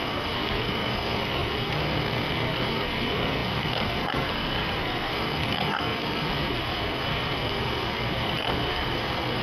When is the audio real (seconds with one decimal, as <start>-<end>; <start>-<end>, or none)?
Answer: none